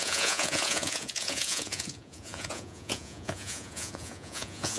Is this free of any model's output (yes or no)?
no